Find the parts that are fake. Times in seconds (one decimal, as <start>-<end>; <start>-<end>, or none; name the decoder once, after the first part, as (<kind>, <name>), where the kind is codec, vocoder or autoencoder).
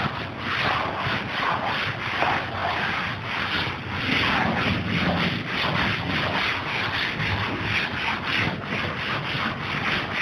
none